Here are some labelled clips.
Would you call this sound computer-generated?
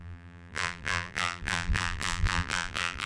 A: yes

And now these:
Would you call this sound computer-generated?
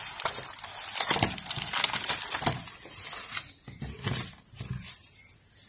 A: no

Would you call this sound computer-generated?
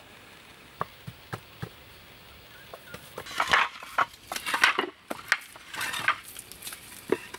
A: no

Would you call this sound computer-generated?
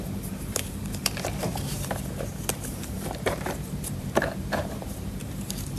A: yes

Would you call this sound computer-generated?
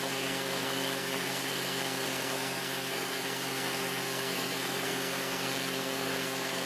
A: yes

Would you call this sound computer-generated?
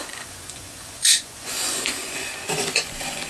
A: yes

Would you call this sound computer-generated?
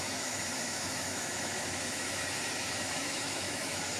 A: yes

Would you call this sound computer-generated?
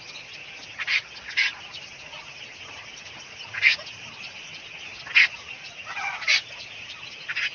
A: no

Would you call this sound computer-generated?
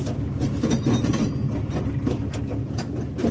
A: no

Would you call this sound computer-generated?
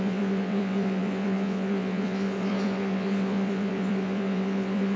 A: yes